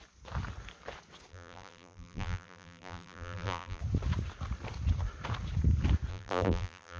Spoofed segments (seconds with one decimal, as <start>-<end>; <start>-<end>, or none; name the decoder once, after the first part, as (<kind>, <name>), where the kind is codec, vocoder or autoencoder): 1.3-3.8 (vocoder, BigVGAN v2); 6.1-7.0